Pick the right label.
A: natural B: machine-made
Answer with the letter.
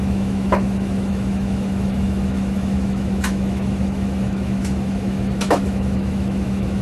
B